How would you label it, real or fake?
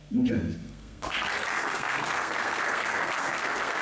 fake